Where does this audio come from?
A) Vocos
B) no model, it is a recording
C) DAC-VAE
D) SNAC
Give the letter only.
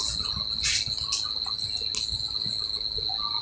B